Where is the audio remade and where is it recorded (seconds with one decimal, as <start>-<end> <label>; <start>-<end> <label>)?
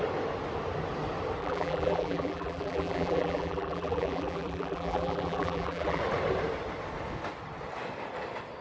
0.0-1.4 recorded; 1.4-6.0 remade; 6.0-8.6 recorded